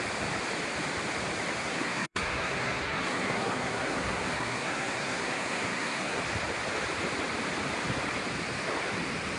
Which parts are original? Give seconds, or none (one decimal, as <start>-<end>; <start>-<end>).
0.0-1.6; 6.2-9.4